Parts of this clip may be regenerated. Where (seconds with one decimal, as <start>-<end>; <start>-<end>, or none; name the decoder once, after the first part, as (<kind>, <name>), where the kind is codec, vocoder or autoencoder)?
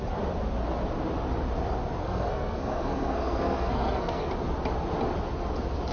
2.0-4.3 (codec, SNAC)